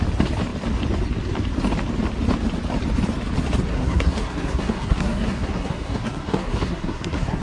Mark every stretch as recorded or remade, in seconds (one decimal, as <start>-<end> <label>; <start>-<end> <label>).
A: 0.0-3.7 recorded; 3.7-7.4 remade